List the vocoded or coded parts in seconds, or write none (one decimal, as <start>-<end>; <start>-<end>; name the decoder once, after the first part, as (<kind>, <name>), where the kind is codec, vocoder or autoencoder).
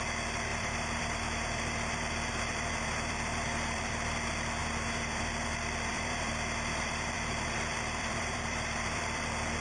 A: 0.5-3.8 (vocoder, BigVGAN v2); 4.6-9.2